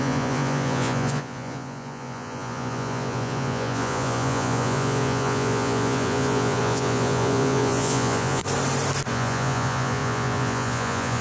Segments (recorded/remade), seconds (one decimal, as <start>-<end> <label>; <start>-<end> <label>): 0.0-8.4 remade; 8.4-9.1 recorded; 9.1-11.2 remade